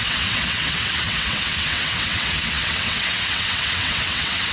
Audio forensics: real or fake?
fake